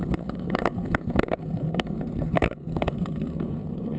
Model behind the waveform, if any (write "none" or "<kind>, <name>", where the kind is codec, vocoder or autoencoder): codec, SNAC